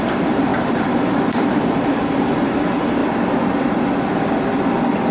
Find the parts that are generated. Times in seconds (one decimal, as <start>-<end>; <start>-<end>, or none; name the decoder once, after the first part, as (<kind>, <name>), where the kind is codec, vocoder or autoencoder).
0.0-3.0 (vocoder, BigVGAN v2)